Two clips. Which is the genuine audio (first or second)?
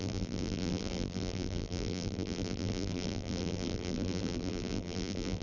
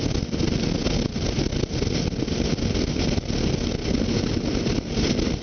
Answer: second